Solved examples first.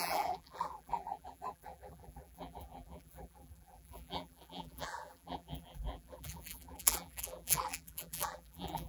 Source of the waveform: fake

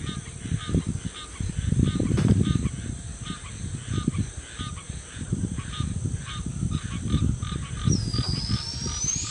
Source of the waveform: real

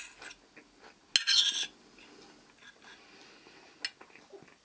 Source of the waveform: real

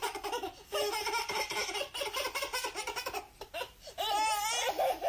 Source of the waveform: real